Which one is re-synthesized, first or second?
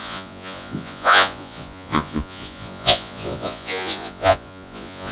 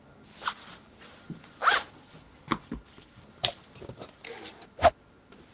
first